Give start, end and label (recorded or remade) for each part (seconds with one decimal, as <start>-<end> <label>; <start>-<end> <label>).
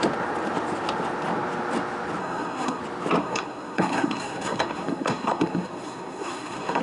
0.0-2.2 recorded; 2.2-2.8 remade; 2.8-3.2 recorded; 3.2-6.8 remade